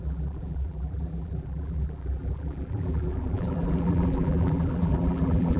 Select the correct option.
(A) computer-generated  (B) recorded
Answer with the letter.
A